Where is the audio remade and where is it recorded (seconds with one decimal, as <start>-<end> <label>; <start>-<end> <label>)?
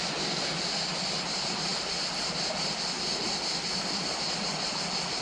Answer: 0.0-5.2 recorded